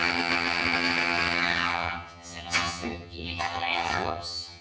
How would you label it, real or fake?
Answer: fake